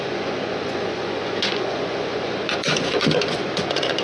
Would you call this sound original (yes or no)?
no